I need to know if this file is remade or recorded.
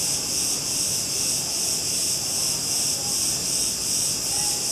recorded